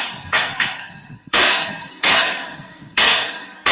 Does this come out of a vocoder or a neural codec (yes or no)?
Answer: yes